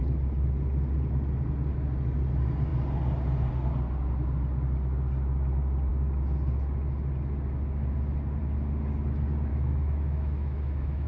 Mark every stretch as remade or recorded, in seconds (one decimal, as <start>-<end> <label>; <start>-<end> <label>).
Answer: 0.0-9.5 recorded; 9.5-11.1 remade